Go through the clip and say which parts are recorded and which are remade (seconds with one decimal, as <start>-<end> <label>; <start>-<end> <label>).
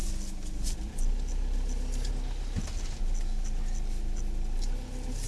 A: 0.0-5.3 recorded